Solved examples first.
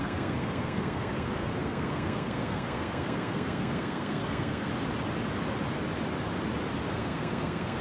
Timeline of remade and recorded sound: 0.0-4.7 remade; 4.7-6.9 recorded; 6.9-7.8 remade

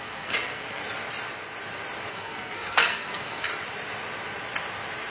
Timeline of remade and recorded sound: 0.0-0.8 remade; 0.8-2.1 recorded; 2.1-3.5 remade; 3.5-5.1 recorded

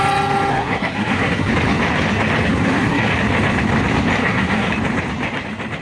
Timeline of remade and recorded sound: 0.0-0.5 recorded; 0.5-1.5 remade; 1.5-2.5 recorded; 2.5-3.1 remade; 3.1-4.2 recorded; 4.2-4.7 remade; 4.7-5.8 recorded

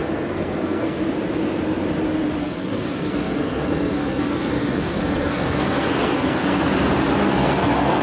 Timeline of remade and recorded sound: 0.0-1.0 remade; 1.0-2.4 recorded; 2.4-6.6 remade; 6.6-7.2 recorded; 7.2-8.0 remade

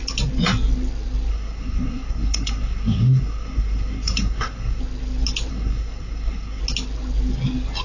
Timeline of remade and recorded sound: 0.0-1.3 recorded; 1.3-4.8 remade; 4.8-5.5 recorded; 5.5-6.6 remade; 6.6-7.8 recorded

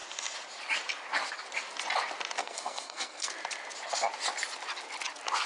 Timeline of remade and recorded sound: 0.0-2.4 recorded; 2.4-3.3 remade; 3.3-5.5 recorded

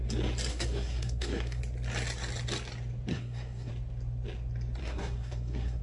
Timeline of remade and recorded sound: 0.0-0.5 recorded; 0.5-1.6 remade; 1.6-3.1 recorded; 3.1-3.7 remade; 3.7-4.8 recorded; 4.8-5.8 remade

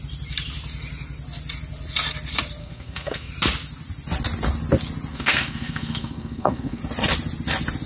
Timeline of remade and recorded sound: 0.0-2.6 recorded; 2.6-3.3 remade; 3.3-5.1 recorded; 5.1-6.8 remade; 6.8-7.9 recorded